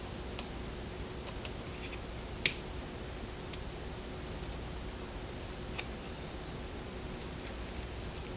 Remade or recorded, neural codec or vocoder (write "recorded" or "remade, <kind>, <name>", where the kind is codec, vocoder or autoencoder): recorded